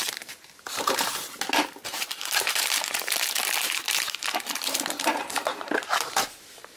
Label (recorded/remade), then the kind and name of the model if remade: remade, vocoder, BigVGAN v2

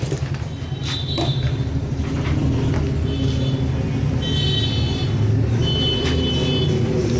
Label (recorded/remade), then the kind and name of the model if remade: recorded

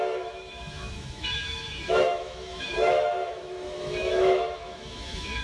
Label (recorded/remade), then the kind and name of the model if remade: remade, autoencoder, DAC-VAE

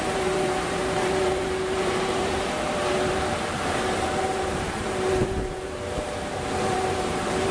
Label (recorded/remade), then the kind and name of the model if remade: remade, vocoder, BigVGAN v2